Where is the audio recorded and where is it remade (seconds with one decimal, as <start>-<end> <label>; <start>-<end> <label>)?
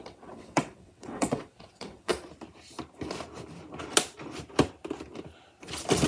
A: 0.0-2.1 remade; 2.1-6.1 recorded